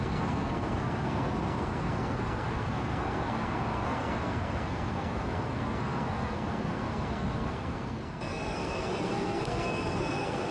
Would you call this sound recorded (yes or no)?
no